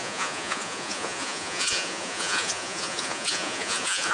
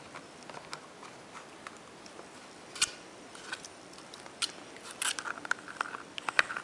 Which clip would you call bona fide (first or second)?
second